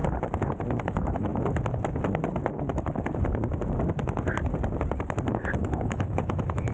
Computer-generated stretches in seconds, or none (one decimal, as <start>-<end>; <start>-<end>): 0.8-1.3; 5.3-6.7